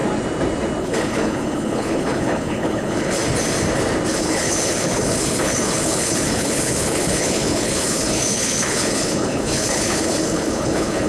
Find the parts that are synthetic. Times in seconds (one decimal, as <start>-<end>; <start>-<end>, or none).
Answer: 0.8-3.2; 4.1-11.1